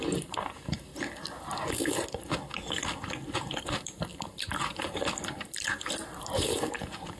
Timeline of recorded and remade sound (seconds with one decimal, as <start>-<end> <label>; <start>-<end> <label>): 0.0-0.9 remade; 0.9-3.6 recorded; 3.6-7.2 remade